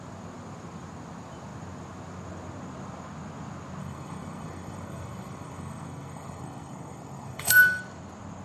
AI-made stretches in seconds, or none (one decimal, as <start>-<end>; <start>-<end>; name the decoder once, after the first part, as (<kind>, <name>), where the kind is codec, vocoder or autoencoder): 3.8-7.8 (codec, SNAC)